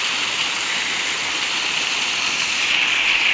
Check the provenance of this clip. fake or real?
real